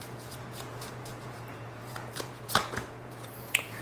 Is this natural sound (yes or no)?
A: no